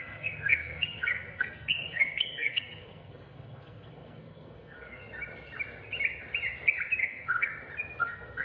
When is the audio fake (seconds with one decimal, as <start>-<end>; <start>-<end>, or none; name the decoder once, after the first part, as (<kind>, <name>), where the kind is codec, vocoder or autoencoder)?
0.0-5.0 (codec, SNAC); 7.0-7.5; 8.0-8.4